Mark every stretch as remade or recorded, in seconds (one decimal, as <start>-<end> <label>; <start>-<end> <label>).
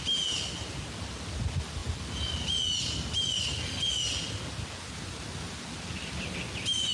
0.0-6.9 recorded